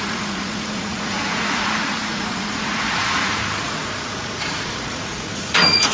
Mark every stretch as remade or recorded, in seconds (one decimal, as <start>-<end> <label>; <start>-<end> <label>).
0.0-5.9 remade